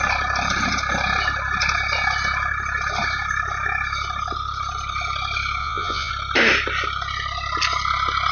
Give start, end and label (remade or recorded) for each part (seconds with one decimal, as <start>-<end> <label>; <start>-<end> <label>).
0.0-5.6 recorded; 5.6-6.1 remade; 6.1-8.3 recorded